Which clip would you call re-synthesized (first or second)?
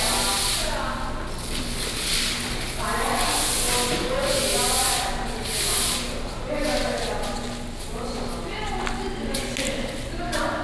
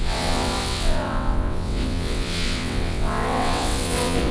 second